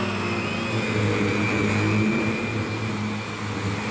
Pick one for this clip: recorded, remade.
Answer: recorded